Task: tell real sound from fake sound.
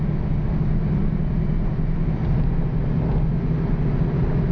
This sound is real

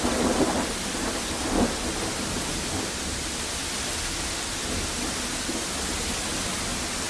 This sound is real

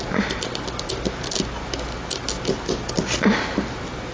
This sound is real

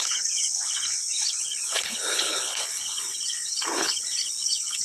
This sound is fake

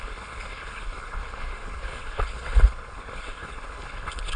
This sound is fake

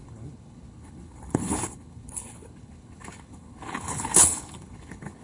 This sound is fake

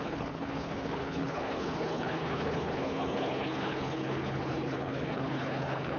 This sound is fake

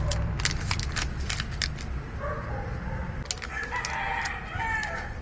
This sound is real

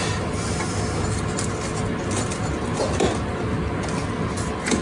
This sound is real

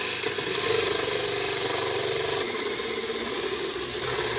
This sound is real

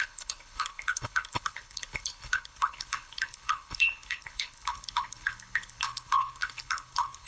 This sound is fake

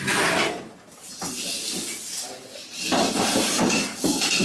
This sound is real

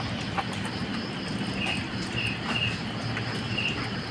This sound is real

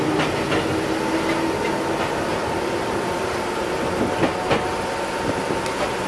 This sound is real